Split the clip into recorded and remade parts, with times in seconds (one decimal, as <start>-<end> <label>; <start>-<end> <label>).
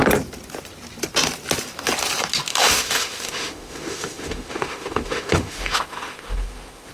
0.0-2.5 recorded; 2.5-6.9 remade